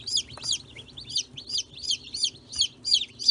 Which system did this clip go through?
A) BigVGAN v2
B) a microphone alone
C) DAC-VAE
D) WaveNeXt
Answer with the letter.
B